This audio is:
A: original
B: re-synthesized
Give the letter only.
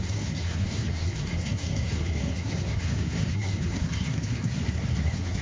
B